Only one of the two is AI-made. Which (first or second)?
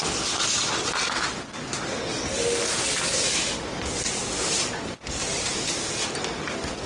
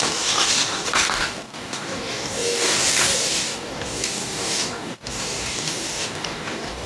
second